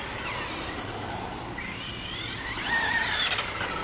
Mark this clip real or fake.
real